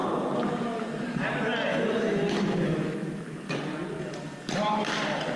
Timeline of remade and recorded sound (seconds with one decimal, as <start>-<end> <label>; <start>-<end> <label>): 0.0-1.7 recorded; 1.7-3.5 remade; 3.5-5.4 recorded

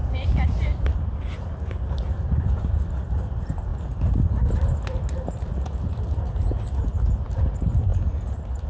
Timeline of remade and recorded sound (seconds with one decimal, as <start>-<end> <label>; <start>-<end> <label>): 0.0-2.4 remade; 2.4-8.7 recorded